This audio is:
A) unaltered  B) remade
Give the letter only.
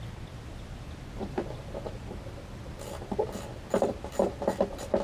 A